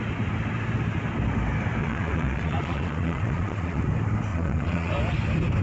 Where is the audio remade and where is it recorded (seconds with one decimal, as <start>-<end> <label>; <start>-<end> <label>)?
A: 0.0-1.8 recorded; 1.8-3.8 remade; 3.8-4.3 recorded; 4.3-4.9 remade; 4.9-5.6 recorded